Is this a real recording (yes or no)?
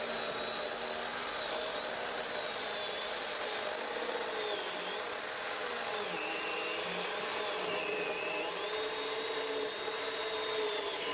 yes